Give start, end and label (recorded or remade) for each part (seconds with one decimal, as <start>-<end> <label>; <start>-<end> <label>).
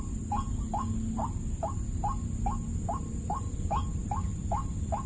0.0-5.1 recorded